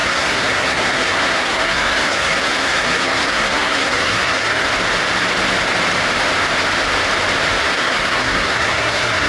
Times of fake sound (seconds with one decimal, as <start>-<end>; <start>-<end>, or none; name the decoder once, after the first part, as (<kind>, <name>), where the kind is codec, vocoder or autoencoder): 0.0-4.7 (codec, SNAC); 7.6-9.3